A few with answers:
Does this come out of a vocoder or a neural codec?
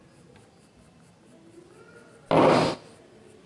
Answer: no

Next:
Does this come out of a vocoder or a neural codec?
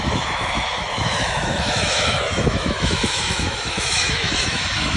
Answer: yes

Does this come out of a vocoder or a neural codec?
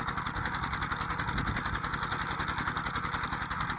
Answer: no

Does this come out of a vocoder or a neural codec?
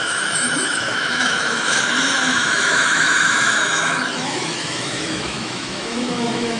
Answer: yes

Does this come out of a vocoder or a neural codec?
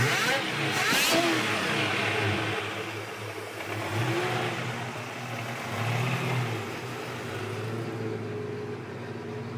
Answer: no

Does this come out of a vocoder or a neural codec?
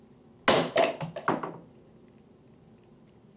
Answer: no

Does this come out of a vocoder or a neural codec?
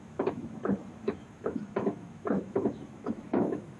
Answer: yes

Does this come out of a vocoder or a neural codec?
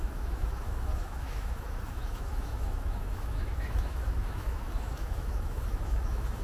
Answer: yes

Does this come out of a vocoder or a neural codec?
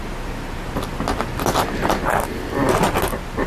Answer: no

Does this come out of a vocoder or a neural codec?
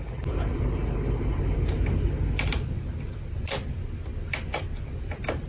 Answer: no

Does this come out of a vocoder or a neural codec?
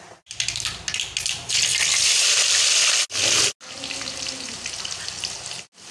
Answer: no